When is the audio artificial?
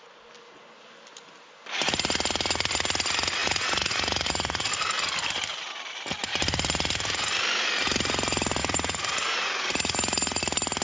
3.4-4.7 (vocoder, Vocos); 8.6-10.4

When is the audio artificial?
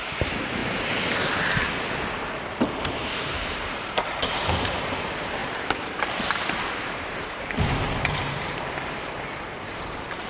0.0-0.6 (vocoder, BigVGAN v2); 2.7-10.3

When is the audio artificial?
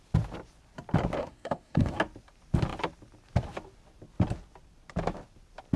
1.2-2.0 (codec, SNAC)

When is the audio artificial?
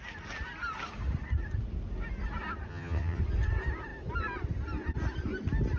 2.7-3.2 (vocoder, HiFi-GAN)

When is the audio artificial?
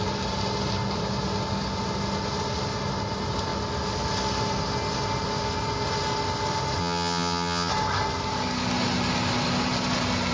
6.8-7.7 (vocoder, HiFi-GAN)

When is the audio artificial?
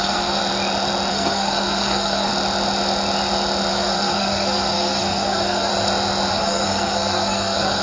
0.0-0.4 (codec, SNAC); 1.1-2.3; 3.7-5.7; 6.3-7.8